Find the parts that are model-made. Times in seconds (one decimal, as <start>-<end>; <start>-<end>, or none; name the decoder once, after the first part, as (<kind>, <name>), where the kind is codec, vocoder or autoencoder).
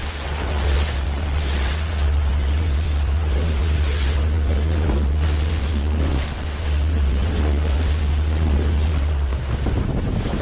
0.0-9.3 (vocoder, WaveNeXt)